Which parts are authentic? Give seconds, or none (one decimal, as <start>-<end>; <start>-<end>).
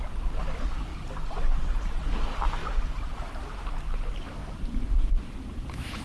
0.0-6.0